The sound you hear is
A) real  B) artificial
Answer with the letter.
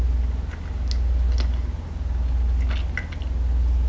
A